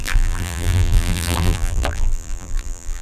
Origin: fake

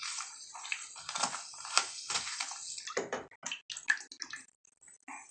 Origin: real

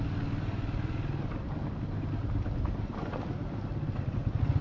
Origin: real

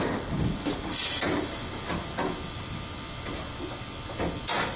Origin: real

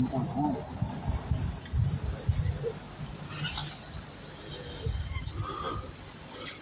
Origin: real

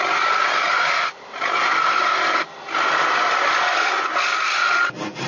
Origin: real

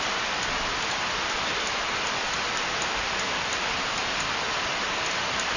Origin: real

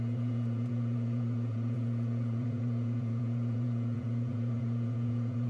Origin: fake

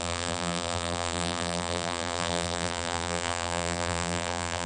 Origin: fake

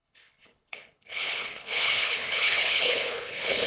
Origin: fake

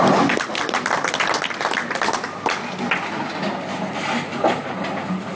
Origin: real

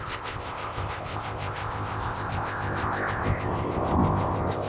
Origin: fake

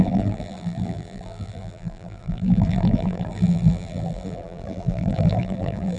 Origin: fake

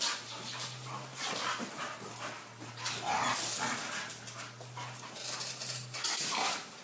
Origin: real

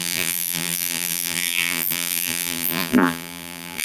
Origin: fake